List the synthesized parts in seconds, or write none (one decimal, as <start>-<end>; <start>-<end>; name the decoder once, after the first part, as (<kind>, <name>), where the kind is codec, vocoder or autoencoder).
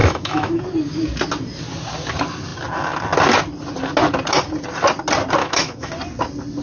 0.0-0.6 (autoencoder, DAC-VAE); 5.4-5.9